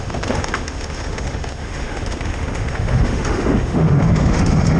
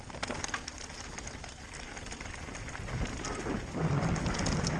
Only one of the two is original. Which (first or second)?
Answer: second